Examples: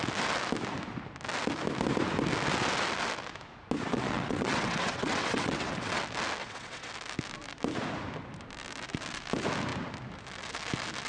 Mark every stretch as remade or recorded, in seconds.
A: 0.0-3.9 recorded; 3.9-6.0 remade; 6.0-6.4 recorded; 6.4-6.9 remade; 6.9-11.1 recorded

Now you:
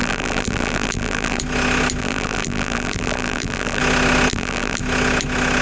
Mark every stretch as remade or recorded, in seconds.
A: 0.0-1.4 remade; 1.4-2.0 recorded; 2.0-3.8 remade; 3.8-4.3 recorded; 4.3-4.8 remade; 4.8-5.6 recorded